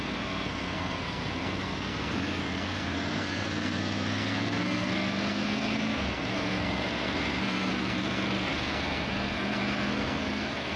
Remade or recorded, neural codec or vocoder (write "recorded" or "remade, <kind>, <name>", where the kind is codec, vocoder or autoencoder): remade, codec, SNAC